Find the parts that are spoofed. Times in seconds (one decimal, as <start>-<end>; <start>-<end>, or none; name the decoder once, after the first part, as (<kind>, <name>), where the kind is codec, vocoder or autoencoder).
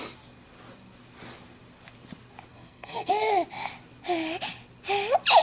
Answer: 2.5-3.1 (codec, SNAC)